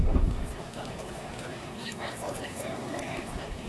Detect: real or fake fake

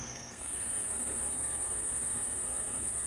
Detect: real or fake fake